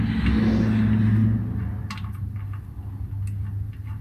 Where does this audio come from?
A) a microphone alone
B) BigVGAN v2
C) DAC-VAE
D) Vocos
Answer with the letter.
A